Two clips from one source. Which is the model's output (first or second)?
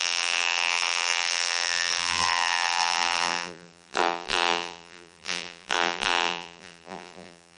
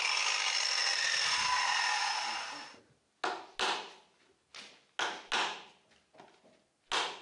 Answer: first